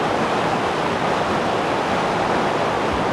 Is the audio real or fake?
real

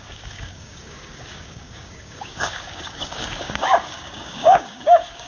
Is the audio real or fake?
fake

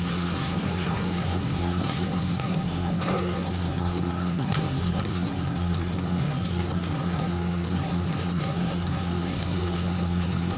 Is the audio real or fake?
fake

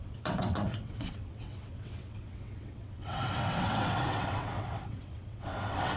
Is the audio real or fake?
fake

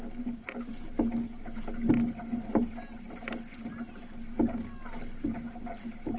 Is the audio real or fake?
real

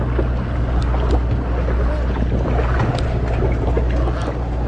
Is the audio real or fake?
real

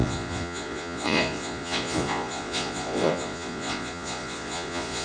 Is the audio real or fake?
fake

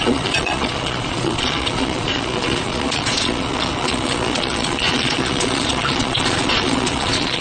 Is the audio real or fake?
fake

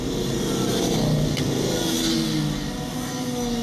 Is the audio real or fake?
real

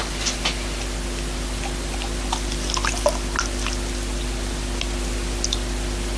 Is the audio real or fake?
real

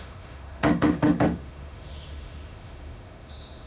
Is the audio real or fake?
fake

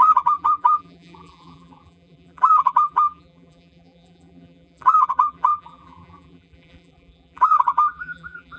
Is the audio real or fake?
fake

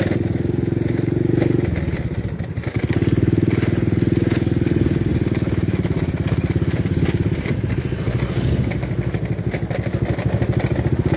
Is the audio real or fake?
real